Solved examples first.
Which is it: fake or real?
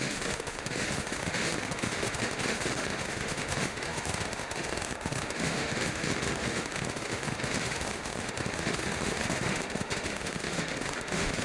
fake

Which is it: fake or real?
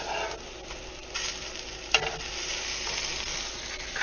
real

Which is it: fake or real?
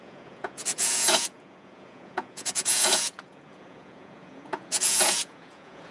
fake